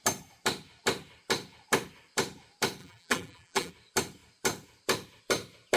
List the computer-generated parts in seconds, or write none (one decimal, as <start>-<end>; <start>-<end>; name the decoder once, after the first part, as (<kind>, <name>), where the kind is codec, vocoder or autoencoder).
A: 2.8-3.7 (vocoder, BigVGAN v2)